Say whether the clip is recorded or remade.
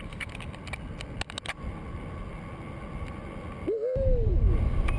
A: recorded